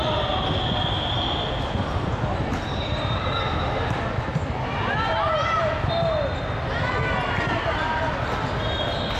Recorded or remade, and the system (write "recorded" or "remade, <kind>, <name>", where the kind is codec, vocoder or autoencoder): recorded